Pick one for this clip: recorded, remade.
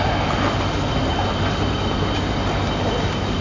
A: recorded